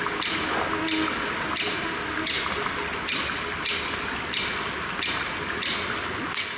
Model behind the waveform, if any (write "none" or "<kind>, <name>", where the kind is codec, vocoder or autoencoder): none